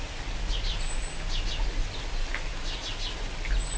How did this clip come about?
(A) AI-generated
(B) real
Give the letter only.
B